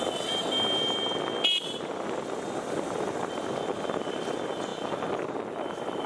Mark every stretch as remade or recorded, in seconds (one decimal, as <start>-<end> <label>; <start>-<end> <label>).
0.0-6.1 recorded